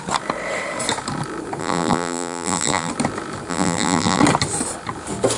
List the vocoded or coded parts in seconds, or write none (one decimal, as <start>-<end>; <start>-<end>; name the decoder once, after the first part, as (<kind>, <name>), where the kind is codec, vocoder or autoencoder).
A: 1.6-2.9 (vocoder, BigVGAN v2); 3.5-4.2